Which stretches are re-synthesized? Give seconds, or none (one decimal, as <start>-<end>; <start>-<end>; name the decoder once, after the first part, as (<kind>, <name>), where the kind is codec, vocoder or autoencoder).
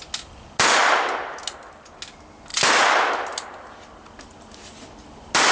none